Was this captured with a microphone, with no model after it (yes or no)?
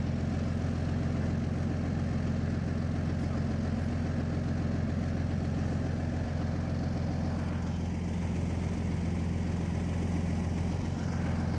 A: yes